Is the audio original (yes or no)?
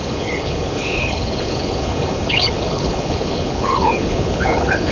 no